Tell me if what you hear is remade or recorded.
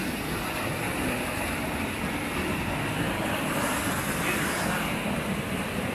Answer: recorded